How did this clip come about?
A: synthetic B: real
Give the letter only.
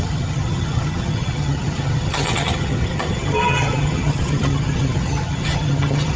A